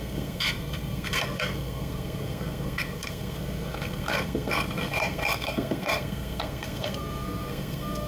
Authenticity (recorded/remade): remade